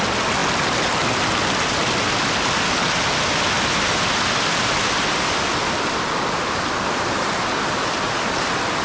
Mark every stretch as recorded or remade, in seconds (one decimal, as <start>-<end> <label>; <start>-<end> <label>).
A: 0.0-8.8 recorded